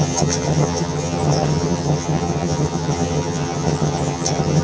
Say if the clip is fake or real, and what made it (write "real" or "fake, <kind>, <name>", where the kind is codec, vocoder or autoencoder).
fake, vocoder, HiFi-GAN